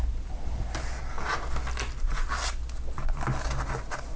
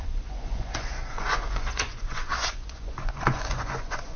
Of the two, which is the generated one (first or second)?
second